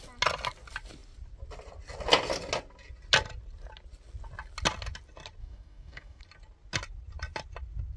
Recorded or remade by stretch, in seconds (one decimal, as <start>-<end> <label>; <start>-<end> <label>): 0.0-5.4 recorded; 5.4-6.2 remade; 6.2-8.0 recorded